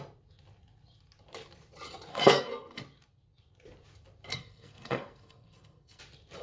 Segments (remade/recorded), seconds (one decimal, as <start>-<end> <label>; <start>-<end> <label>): 0.0-2.1 recorded; 2.1-2.8 remade; 2.8-4.3 recorded; 4.3-6.0 remade; 6.0-6.4 recorded